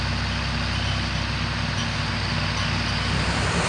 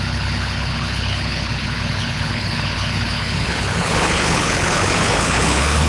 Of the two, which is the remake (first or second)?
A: second